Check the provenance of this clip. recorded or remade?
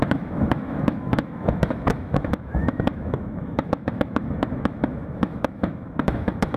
remade